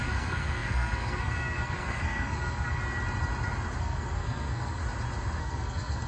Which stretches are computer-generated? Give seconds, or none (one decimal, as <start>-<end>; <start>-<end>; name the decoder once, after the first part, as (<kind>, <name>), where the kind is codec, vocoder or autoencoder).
0.0-2.8 (codec, SNAC); 3.8-4.8; 5.4-6.1